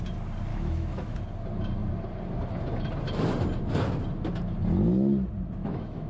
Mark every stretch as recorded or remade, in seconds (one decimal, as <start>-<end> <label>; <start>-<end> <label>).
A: 0.0-0.5 recorded; 0.5-1.2 remade; 1.2-5.6 recorded; 5.6-6.1 remade